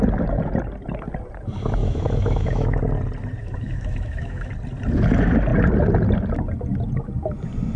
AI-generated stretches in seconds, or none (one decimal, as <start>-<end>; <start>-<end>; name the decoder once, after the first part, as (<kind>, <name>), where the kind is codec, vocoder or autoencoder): 1.8-2.8 (autoencoder, DAC-VAE); 3.4-4.5